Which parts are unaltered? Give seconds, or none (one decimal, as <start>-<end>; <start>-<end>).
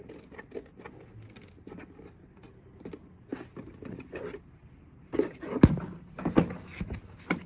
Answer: 0.0-7.5